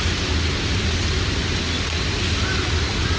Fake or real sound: real